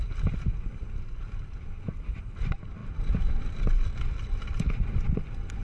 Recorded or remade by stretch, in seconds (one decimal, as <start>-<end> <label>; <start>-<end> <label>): 0.0-5.6 recorded